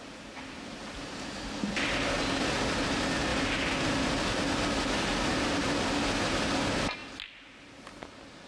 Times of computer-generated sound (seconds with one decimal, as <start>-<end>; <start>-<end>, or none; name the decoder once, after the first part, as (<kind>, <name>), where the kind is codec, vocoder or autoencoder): none